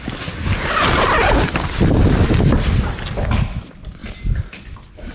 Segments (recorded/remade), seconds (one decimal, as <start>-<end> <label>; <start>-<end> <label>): 0.0-5.1 recorded